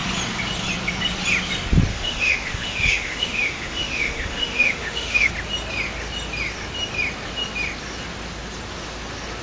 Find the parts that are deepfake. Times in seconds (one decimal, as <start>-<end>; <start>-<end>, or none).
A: 1.9-5.3